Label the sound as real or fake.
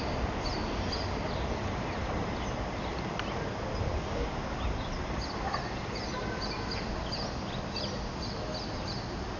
real